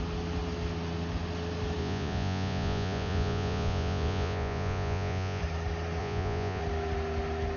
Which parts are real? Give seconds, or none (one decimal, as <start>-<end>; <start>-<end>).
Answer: 0.0-1.8; 5.4-6.0; 6.6-7.6